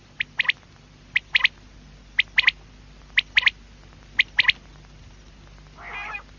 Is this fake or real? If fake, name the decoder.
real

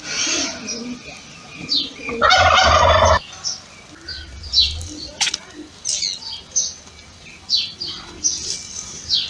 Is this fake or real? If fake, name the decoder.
real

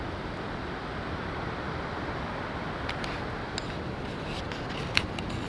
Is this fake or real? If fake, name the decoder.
real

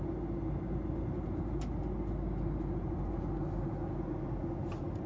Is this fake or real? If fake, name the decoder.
real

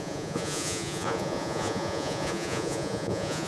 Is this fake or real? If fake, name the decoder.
fake, vocoder, Vocos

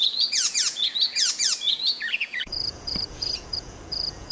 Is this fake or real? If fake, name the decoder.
fake, vocoder, Vocos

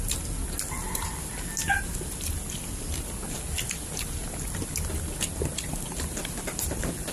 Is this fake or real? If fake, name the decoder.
real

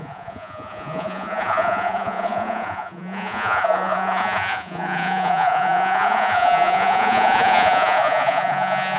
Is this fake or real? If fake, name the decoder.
fake, vocoder, Vocos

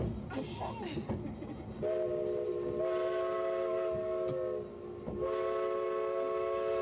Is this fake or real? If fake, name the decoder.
real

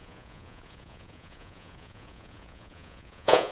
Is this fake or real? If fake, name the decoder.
fake, vocoder, Vocos